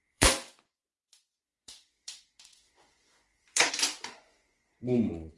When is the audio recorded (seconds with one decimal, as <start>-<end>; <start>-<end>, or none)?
none